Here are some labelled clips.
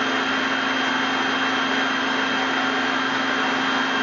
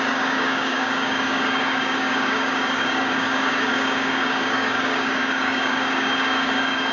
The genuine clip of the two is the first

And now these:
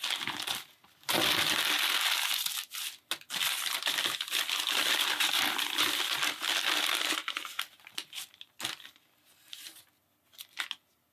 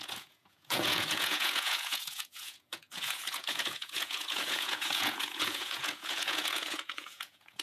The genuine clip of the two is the first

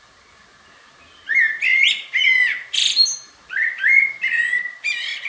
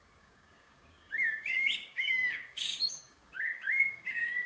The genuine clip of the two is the first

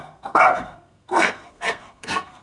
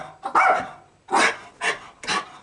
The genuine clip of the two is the second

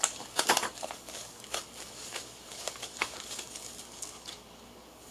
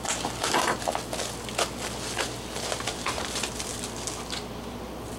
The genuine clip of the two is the second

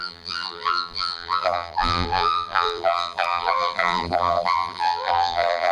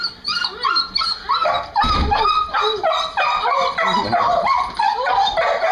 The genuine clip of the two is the second